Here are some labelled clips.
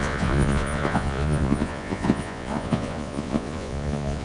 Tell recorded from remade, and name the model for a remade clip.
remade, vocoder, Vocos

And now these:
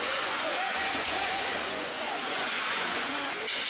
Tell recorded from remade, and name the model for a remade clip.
remade, vocoder, Vocos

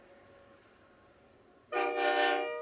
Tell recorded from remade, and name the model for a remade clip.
recorded